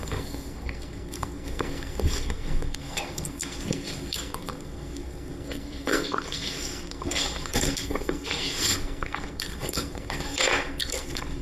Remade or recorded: remade